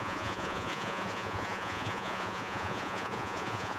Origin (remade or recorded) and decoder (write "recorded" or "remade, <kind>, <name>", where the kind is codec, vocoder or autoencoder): remade, vocoder, Vocos